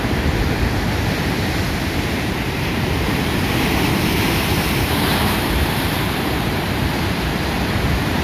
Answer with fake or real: fake